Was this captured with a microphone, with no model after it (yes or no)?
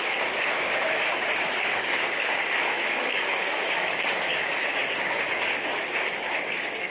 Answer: no